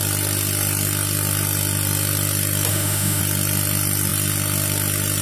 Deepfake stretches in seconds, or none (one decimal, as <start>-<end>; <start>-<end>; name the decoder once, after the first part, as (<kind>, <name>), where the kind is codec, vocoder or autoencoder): 2.7-3.2 (autoencoder, DAC-VAE)